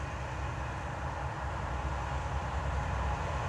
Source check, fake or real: fake